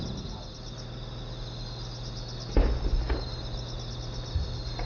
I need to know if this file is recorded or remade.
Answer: recorded